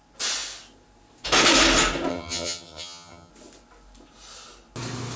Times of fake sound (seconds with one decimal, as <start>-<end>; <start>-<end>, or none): 2.1-3.3